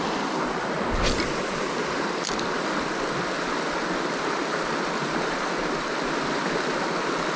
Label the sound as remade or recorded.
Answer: recorded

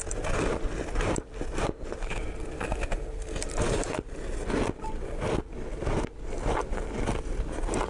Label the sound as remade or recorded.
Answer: recorded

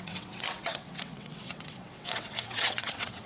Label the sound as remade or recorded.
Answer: remade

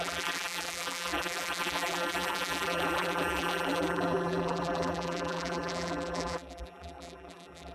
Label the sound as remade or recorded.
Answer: remade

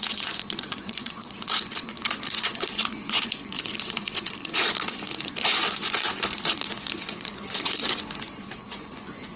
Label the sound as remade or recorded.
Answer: remade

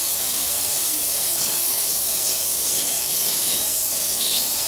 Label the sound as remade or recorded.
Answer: remade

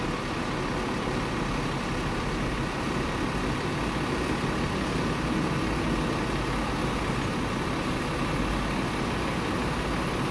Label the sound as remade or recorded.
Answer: recorded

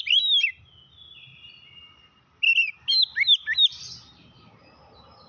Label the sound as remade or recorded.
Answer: recorded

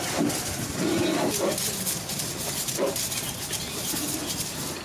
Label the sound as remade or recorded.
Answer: recorded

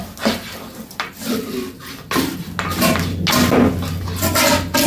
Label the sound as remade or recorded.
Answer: recorded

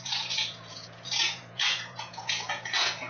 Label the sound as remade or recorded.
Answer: remade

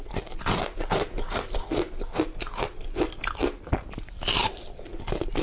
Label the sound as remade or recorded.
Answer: recorded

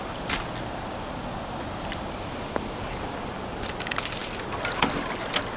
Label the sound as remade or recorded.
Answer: recorded